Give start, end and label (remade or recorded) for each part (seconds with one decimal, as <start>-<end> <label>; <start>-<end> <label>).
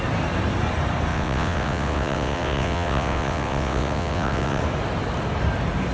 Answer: 0.0-1.1 recorded; 1.1-4.6 remade; 4.6-5.9 recorded